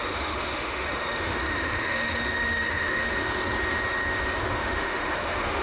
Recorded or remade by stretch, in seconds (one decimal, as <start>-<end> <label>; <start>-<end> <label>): 0.0-3.1 remade; 3.1-4.4 recorded; 4.4-5.6 remade